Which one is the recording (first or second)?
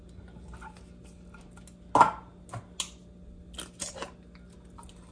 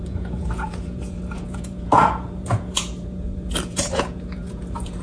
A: first